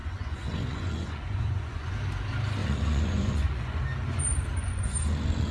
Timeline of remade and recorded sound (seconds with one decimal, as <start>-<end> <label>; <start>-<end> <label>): 0.0-1.9 remade; 1.9-2.6 recorded; 2.6-3.8 remade; 3.8-4.6 recorded; 4.6-5.5 remade